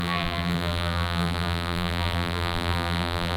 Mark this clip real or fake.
fake